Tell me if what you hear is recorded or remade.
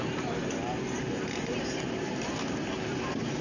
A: recorded